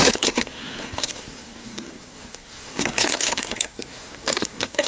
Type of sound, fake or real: fake